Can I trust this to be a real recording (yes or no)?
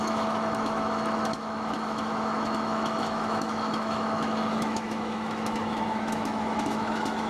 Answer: no